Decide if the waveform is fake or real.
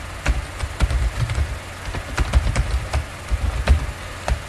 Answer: real